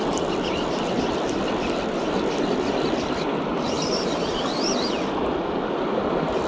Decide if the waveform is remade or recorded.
recorded